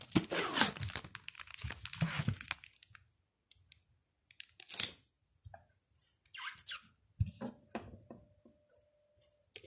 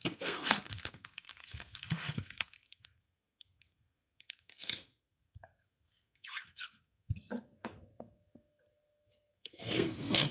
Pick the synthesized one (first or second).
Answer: second